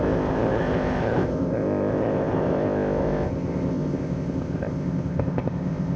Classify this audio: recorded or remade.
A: remade